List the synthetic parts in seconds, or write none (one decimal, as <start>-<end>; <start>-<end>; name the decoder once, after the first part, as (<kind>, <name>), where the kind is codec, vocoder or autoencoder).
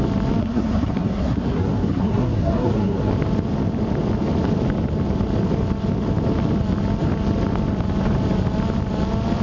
0.4-3.1 (codec, SNAC)